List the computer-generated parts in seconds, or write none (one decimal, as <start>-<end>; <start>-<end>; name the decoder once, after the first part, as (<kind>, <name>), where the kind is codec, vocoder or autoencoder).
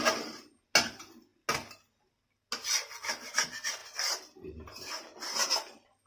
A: none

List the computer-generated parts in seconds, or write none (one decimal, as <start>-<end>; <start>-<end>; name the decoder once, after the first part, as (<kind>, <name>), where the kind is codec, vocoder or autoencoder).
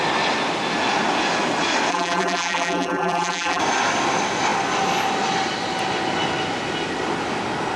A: 1.9-3.6 (vocoder, BigVGAN v2)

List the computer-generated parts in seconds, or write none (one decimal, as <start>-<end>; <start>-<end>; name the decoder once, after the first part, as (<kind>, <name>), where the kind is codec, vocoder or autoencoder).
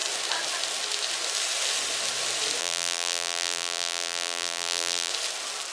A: 2.6-5.1 (vocoder, BigVGAN v2)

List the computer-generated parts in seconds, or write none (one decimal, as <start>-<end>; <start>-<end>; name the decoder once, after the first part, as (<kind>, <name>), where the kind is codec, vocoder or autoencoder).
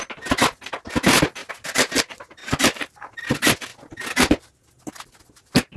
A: 2.4-3.3 (vocoder, BigVGAN v2)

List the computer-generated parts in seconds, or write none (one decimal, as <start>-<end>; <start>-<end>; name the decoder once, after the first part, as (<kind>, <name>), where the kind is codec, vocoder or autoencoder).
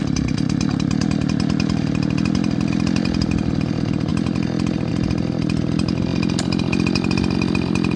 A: none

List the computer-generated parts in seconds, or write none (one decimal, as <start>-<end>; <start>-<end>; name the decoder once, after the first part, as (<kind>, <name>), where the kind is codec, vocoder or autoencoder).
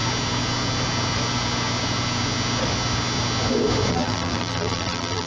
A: 3.9-5.3 (vocoder, BigVGAN v2)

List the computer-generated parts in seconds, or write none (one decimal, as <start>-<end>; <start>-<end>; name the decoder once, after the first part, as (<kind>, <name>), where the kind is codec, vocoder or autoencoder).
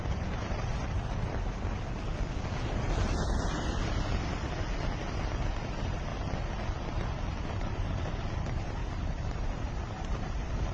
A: 0.0-2.1 (vocoder, BigVGAN v2); 5.5-6.1; 7.6-10.7